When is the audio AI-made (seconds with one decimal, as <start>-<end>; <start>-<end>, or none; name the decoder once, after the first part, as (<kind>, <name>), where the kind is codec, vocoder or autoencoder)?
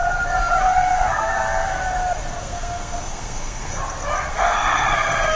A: 0.6-1.8 (codec, SNAC); 2.4-3.8; 4.3-5.4